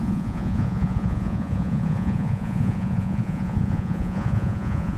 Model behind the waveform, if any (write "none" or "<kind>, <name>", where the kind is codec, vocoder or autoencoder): vocoder, Vocos